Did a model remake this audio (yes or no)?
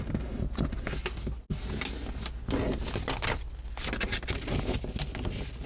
no